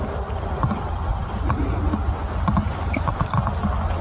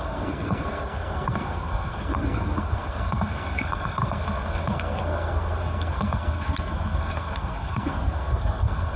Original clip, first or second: first